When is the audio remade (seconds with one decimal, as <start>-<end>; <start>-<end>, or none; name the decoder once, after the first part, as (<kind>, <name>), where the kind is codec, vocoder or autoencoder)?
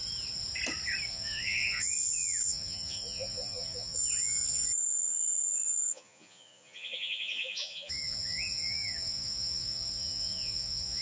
1.1-11.0 (vocoder, Vocos)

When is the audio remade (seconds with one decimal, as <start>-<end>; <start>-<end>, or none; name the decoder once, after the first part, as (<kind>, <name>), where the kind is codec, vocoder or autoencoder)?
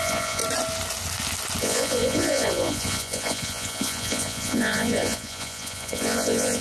0.0-0.4 (vocoder, Vocos); 1.6-6.6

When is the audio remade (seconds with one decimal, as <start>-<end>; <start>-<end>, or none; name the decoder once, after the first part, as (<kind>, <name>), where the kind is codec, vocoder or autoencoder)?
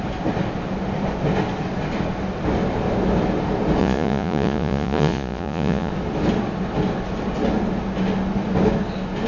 3.8-5.9 (vocoder, Vocos)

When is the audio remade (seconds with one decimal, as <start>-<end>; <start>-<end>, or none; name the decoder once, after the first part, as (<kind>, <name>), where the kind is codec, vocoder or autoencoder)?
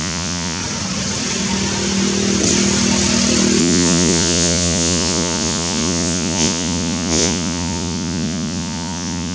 0.0-0.6 (vocoder, Vocos); 3.6-9.3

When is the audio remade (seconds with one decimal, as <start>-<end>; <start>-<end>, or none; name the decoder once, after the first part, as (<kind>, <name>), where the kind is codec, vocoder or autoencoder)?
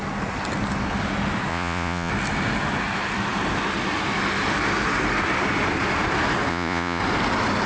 1.5-2.1 (vocoder, Vocos); 6.5-7.0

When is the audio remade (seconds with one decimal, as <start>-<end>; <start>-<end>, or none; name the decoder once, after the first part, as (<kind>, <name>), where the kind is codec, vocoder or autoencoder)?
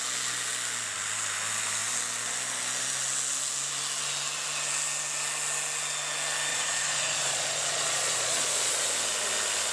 6.5-8.9 (vocoder, Vocos)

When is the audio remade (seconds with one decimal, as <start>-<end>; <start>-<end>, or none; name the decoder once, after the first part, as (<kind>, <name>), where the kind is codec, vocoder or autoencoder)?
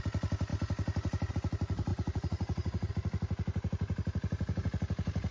1.9-2.9 (vocoder, Vocos)